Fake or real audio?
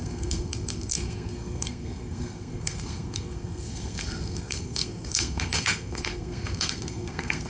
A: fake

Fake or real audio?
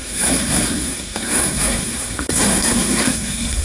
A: fake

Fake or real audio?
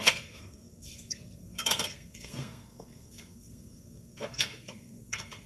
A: fake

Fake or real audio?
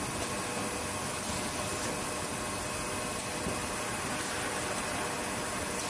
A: real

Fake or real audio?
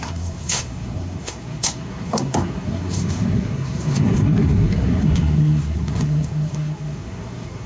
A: fake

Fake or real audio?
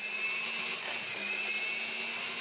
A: real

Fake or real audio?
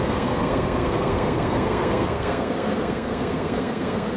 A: fake